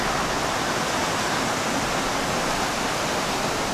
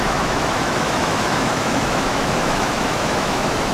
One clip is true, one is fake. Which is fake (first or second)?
second